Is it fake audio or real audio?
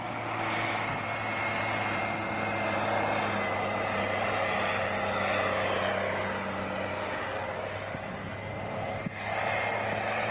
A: real